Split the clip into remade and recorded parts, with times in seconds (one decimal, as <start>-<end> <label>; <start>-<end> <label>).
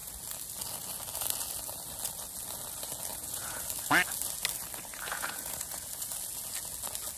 0.0-3.1 recorded; 3.1-3.6 remade; 3.6-4.9 recorded; 4.9-5.9 remade; 5.9-7.2 recorded